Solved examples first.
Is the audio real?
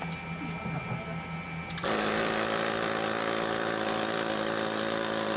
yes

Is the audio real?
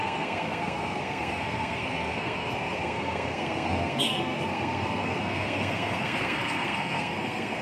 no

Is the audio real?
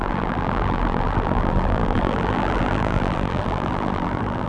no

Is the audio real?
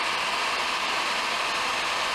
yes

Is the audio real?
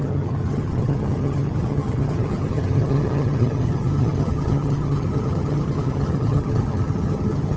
no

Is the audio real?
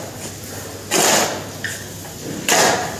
yes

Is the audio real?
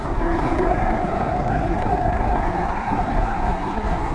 no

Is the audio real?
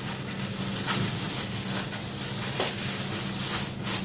yes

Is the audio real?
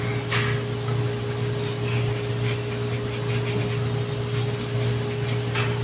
yes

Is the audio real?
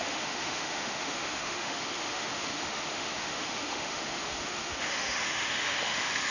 no